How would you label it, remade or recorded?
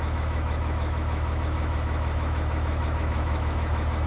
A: remade